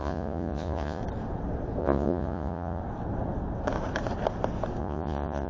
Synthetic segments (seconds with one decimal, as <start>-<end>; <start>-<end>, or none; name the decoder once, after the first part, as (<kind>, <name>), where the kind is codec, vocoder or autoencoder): 0.0-1.0 (vocoder, Vocos); 1.8-2.8; 4.8-5.5